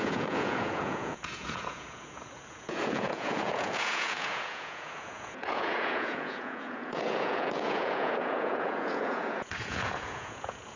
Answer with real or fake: fake